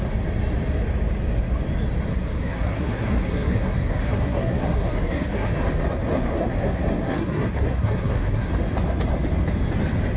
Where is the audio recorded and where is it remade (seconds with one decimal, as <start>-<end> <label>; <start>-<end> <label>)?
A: 0.0-2.1 recorded; 2.1-5.5 remade; 5.5-6.3 recorded; 6.3-8.5 remade; 8.5-10.2 recorded